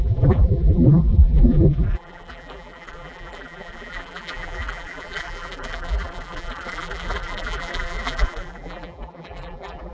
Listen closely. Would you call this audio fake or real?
fake